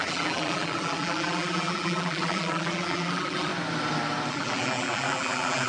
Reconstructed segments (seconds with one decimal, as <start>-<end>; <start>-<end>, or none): 0.0-3.5; 4.3-5.7